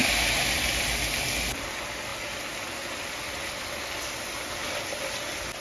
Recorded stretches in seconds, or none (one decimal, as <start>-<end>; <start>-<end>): 0.8-5.6